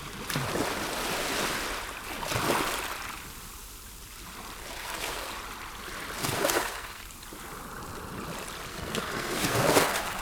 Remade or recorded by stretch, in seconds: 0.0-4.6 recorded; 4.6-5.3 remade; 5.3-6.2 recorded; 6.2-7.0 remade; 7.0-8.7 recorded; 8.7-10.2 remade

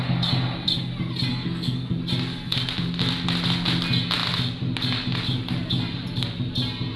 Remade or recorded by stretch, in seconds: 0.0-1.3 recorded; 1.3-2.0 remade; 2.0-7.0 recorded

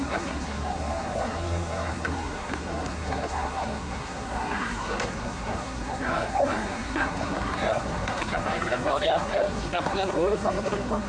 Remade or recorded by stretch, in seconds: 0.0-11.1 remade

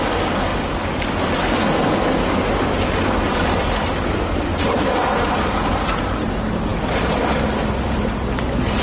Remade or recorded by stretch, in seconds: 0.0-8.8 recorded

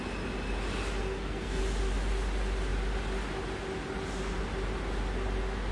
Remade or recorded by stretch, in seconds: 0.0-1.0 recorded; 1.0-1.6 remade; 1.6-5.7 recorded

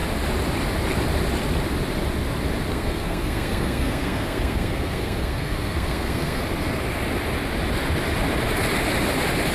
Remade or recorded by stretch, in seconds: 0.0-2.7 recorded; 2.7-6.4 remade; 6.4-9.5 recorded